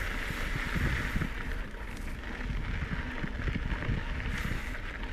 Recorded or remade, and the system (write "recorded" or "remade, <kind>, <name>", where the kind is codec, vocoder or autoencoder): recorded